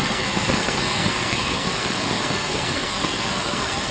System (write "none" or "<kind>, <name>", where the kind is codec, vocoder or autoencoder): codec, SNAC